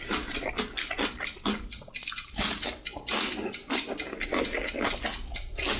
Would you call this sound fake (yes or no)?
no